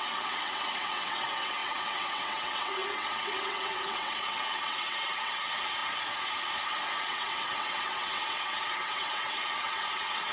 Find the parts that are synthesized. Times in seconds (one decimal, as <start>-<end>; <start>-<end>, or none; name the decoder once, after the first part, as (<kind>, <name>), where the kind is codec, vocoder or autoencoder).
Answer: 0.0-5.8 (vocoder, WaveNeXt); 7.0-10.3